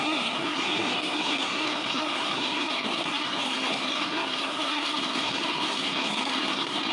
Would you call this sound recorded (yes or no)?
no